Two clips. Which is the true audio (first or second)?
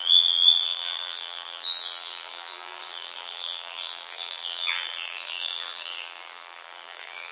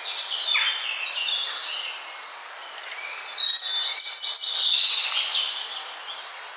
second